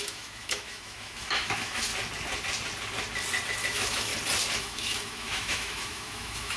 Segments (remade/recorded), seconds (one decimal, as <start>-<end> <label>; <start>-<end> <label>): 0.0-1.9 remade; 1.9-3.5 recorded; 3.5-4.1 remade; 4.1-4.6 recorded; 4.6-6.6 remade